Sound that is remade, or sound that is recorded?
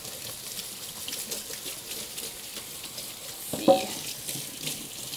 recorded